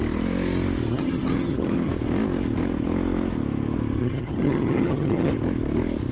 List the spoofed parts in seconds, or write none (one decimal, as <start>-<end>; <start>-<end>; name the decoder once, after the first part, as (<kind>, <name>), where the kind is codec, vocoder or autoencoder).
0.9-1.9 (vocoder, HiFi-GAN); 4.0-5.3